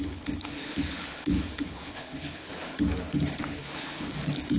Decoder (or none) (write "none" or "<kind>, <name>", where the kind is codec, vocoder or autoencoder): codec, HILCodec